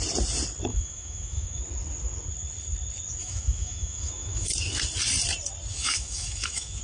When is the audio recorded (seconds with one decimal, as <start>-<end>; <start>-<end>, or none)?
0.0-0.7; 1.6-3.2; 4.5-5.7